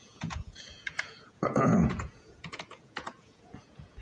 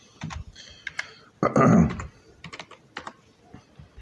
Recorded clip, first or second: second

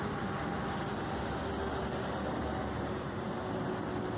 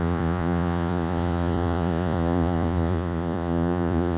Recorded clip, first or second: first